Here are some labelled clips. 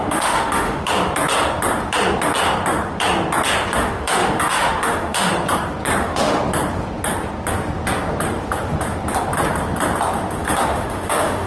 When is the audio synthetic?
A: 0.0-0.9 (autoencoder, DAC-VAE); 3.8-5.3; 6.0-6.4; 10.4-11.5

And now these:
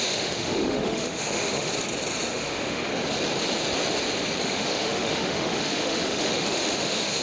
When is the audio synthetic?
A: 0.0-1.7 (autoencoder, DAC-VAE); 2.3-2.9; 4.4-7.2

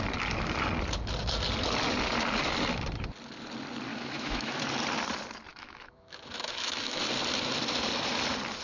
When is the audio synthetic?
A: 3.9-4.6 (autoencoder, DAC-VAE); 5.5-7.0